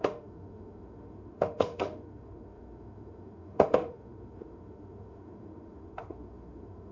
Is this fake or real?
fake